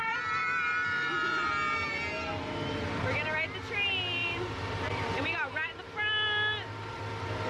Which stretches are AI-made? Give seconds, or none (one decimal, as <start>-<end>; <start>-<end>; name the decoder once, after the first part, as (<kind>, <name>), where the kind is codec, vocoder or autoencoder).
0.4-1.5 (vocoder, BigVGAN v2); 4.2-5.1